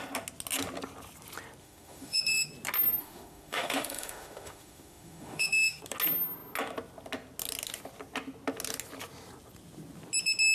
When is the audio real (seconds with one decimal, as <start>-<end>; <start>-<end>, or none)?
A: 0.0-1.6; 2.5-3.0; 5.8-10.5